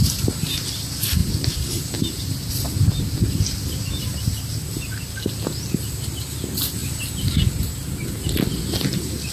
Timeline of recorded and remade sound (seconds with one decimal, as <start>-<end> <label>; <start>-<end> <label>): 0.0-1.2 recorded; 1.2-2.5 remade; 2.5-9.3 recorded